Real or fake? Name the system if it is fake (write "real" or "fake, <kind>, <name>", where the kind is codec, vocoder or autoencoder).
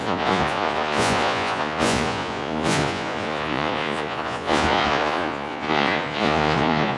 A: fake, vocoder, Vocos